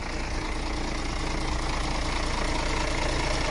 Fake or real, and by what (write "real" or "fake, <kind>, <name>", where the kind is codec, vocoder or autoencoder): real